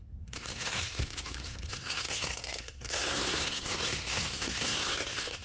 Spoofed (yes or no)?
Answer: yes